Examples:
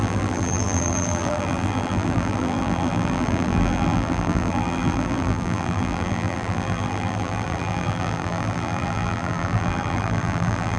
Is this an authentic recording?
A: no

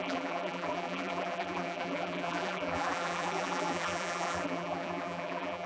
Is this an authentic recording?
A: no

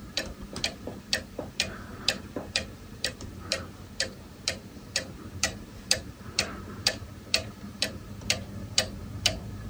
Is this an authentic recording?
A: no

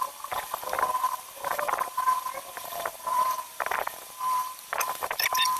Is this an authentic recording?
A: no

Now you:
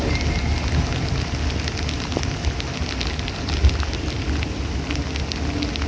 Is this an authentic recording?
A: yes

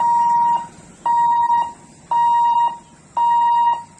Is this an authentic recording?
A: yes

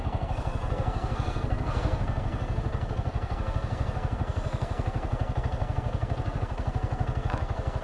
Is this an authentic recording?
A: no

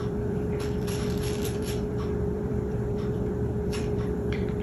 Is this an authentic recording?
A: no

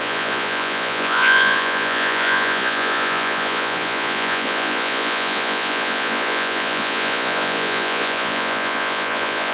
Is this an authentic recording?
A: no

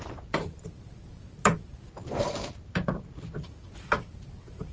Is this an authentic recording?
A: no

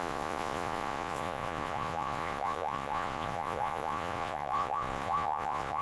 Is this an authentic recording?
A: no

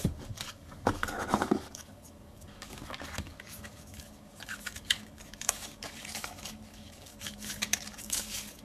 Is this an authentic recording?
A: no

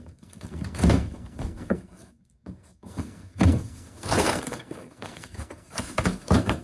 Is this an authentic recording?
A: no